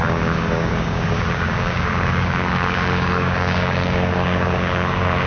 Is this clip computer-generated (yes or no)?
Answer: yes